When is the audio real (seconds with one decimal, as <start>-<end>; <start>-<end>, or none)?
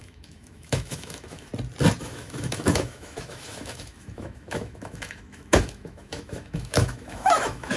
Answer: 1.5-2.0